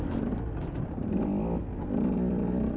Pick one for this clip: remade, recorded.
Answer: recorded